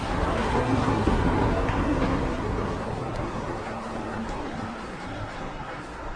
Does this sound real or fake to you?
fake